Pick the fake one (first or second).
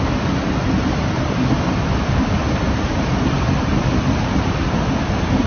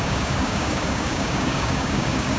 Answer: second